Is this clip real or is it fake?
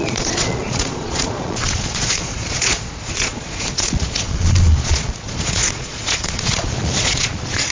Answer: fake